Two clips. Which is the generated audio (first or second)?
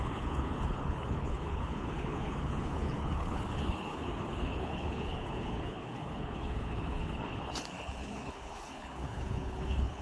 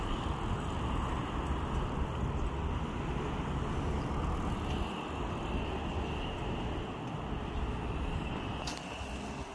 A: first